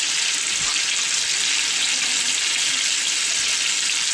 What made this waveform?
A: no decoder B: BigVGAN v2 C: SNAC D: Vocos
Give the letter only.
A